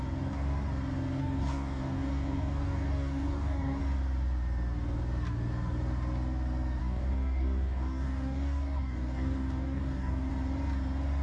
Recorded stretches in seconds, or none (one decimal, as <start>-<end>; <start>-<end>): 0.0-1.2; 3.8-6.8; 10.3-11.2

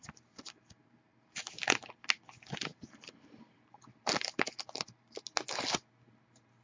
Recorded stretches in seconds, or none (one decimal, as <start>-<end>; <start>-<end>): 0.0-2.7; 4.1-6.6

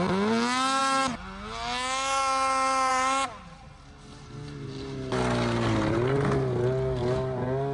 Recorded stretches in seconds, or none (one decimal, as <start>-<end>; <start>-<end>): 0.0-7.7